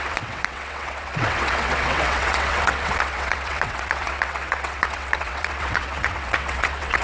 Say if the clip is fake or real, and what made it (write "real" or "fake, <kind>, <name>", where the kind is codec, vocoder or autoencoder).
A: fake, vocoder, WaveNeXt